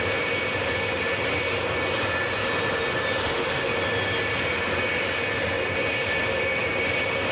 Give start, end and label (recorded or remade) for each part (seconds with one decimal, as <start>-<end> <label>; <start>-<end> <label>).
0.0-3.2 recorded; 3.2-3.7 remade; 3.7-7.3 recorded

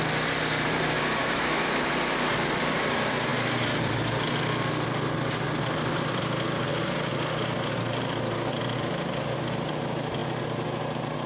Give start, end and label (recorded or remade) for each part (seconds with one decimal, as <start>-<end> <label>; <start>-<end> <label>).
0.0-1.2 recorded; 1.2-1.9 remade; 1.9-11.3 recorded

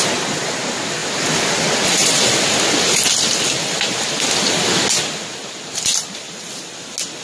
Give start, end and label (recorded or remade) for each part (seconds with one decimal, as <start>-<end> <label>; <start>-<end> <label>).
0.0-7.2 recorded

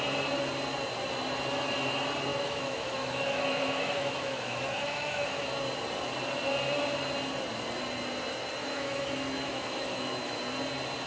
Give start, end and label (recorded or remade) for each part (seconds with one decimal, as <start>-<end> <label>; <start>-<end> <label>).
0.0-2.3 recorded; 2.3-5.5 remade; 5.5-8.6 recorded; 8.6-10.4 remade; 10.4-11.1 recorded

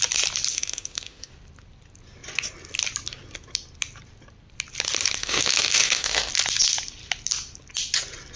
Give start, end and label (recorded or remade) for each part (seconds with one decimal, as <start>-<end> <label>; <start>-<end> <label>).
0.0-0.5 recorded; 0.5-1.3 remade; 1.3-5.2 recorded; 5.2-6.3 remade; 6.3-8.4 recorded